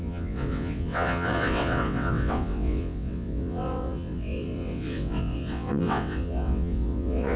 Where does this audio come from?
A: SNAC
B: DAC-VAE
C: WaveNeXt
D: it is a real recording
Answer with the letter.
C